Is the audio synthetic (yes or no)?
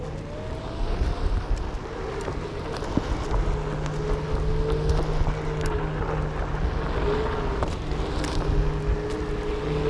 no